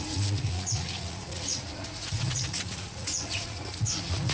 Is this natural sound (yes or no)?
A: no